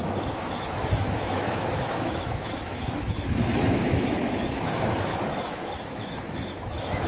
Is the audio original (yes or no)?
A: no